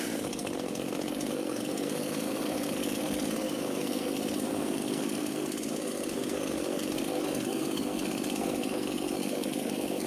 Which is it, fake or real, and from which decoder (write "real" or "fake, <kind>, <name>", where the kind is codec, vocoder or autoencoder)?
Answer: fake, codec, SNAC